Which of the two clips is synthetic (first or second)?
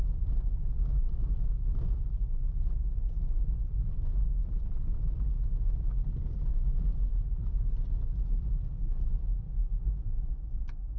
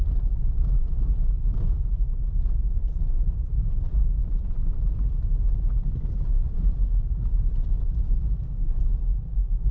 second